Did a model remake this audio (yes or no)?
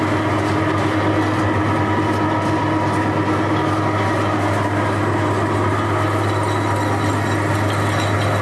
no